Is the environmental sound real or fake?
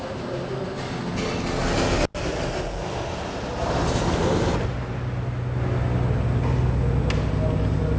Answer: real